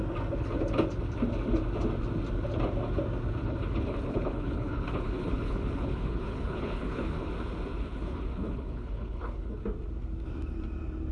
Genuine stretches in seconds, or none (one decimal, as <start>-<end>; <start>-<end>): 0.0-3.4; 7.3-7.7; 9.6-11.1